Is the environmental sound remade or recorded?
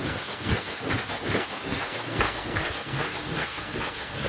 remade